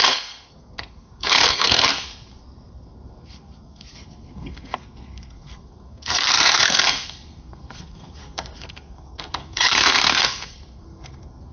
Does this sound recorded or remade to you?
remade